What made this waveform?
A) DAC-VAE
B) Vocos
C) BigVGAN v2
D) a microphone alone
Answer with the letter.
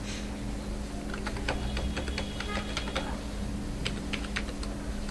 D